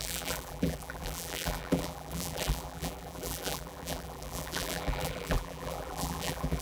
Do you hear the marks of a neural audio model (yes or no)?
yes